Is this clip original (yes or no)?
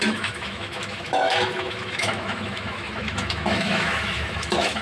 no